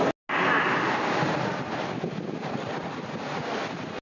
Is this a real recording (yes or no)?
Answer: yes